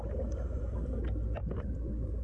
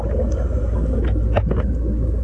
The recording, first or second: second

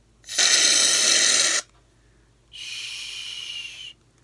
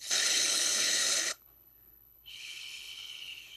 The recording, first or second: first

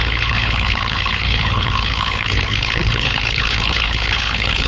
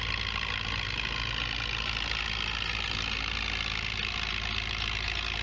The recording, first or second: second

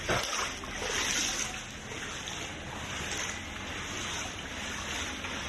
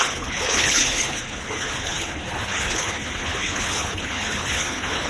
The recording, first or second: first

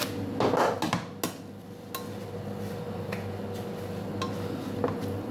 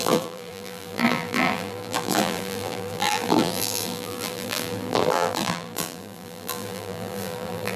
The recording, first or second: first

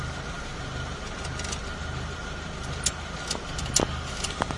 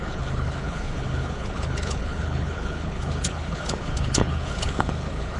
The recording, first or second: first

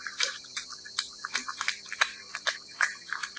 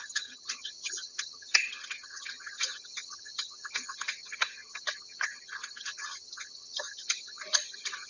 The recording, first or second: first